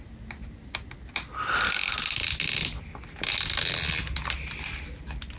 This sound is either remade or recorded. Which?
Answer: recorded